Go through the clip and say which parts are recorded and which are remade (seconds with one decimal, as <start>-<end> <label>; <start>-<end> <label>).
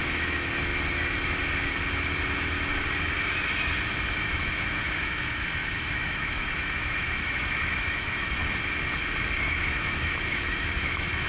0.0-0.7 remade; 0.7-4.2 recorded; 4.2-8.4 remade; 8.4-9.4 recorded; 9.4-11.3 remade